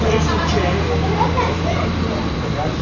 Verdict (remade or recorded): recorded